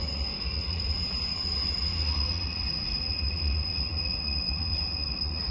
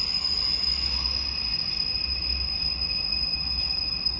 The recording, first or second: second